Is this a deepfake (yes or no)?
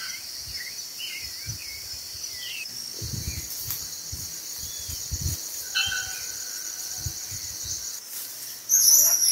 no